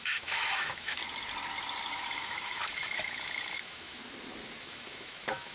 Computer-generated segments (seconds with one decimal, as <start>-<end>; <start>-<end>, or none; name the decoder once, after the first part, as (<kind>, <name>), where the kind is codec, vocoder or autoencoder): 0.0-1.0 (autoencoder, DAC-VAE); 1.9-4.0; 4.6-5.5